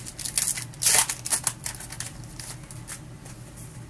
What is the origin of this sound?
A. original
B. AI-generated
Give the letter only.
A